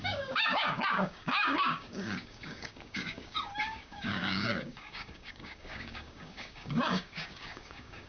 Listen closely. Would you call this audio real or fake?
fake